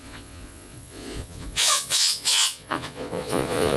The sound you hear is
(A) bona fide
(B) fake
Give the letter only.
B